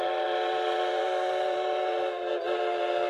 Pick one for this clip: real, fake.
fake